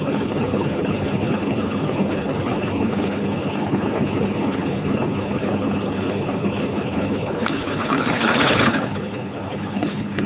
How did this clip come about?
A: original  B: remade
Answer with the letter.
B